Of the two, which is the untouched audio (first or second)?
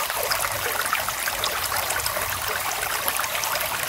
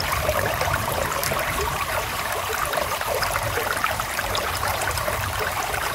first